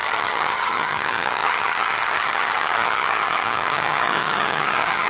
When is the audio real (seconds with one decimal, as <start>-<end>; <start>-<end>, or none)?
none

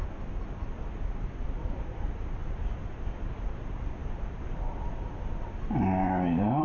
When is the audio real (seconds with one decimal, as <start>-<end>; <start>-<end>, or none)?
0.0-6.6

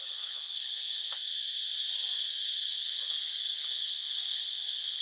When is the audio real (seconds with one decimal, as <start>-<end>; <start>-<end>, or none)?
1.2-2.7

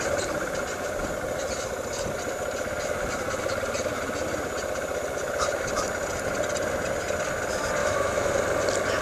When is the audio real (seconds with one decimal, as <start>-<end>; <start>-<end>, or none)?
0.0-7.8; 8.3-9.0

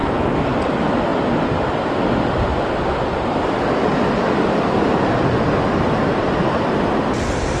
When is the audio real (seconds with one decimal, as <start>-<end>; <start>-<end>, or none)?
0.0-2.5; 4.9-7.6

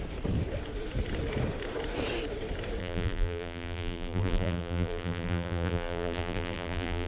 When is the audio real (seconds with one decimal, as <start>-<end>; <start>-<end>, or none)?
0.0-2.8

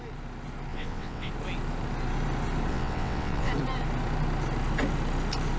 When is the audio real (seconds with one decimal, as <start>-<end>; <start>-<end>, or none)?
0.0-0.7; 1.3-2.7; 3.5-5.6